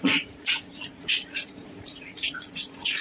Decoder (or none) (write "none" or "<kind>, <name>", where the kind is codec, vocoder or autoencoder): vocoder, Vocos